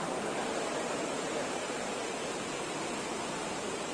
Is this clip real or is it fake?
real